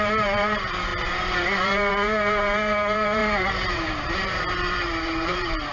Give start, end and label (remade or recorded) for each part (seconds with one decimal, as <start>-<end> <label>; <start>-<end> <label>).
0.0-5.7 remade